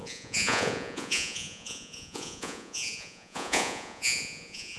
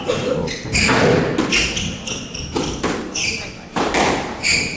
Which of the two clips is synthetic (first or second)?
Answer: first